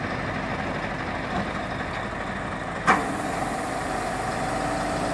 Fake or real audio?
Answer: real